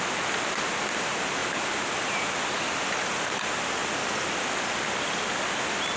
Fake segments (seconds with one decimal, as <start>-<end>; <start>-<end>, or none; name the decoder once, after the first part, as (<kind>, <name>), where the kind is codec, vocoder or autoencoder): none